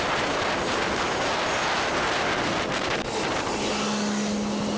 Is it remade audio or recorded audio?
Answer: recorded